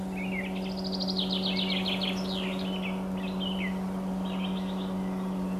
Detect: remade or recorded recorded